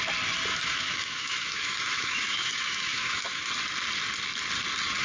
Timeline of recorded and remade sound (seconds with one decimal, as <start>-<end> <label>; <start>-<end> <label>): 0.0-0.5 recorded; 0.5-3.5 remade; 3.5-5.0 recorded